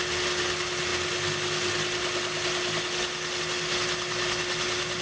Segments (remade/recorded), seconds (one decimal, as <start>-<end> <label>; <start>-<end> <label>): 0.0-5.0 recorded